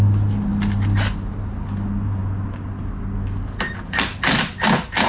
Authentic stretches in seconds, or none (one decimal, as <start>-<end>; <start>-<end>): 0.0-5.1